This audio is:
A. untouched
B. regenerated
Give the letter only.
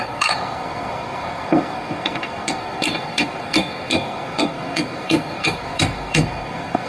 B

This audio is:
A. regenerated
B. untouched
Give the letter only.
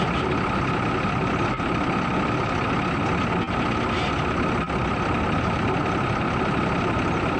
B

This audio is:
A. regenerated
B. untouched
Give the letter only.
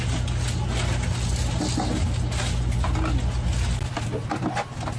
B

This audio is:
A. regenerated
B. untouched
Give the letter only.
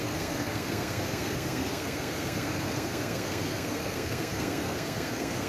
A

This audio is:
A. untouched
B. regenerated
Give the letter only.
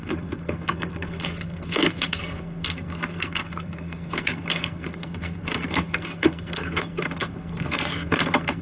B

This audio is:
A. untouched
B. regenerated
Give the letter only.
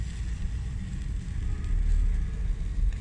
A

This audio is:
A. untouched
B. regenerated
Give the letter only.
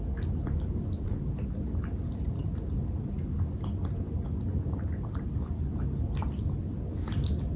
A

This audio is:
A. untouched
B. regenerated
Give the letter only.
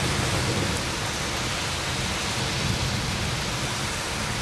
A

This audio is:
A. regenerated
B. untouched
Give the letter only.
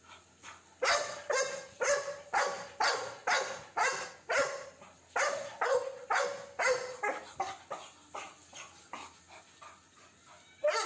B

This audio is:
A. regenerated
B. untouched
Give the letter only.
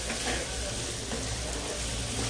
B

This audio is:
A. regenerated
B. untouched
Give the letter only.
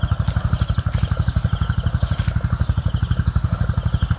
B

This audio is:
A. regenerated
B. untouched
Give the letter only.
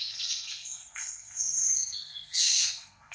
A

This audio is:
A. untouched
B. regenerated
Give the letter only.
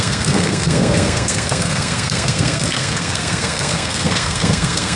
B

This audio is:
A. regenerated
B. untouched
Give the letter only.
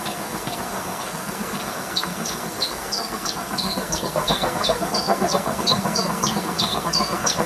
A